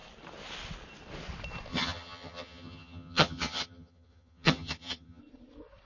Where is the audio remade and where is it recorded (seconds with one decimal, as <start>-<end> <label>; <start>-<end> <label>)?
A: 0.0-1.7 recorded; 1.7-5.2 remade; 5.2-5.9 recorded